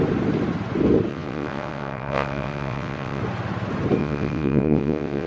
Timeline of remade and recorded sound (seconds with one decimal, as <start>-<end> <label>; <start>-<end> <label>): 0.0-1.1 recorded; 1.1-3.2 remade; 3.2-4.0 recorded; 4.0-5.3 remade

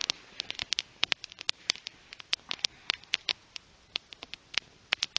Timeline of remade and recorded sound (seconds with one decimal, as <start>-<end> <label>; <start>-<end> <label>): 0.0-5.2 recorded

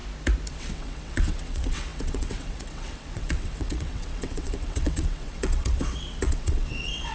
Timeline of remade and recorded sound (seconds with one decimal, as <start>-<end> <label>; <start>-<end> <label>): 0.0-0.5 recorded; 0.5-7.1 remade

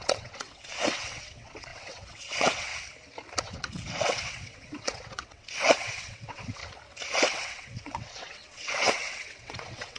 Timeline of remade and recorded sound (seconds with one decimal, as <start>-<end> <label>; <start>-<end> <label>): 0.0-2.7 remade; 2.7-3.4 recorded; 3.4-6.6 remade; 6.6-7.3 recorded; 7.3-10.0 remade

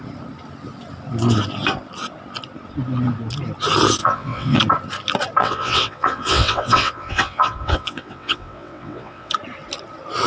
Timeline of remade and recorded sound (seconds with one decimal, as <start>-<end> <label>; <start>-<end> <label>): 0.0-4.0 recorded; 4.0-4.6 remade; 4.6-5.4 recorded; 5.4-9.3 remade; 9.3-10.3 recorded